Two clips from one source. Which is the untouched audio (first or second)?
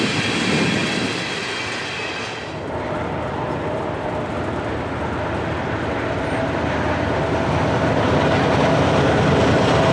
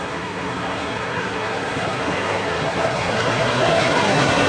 first